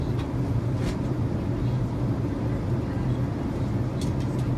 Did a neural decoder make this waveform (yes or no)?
no